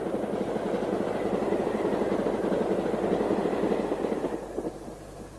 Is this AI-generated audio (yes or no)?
yes